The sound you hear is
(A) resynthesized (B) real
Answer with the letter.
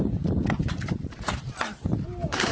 A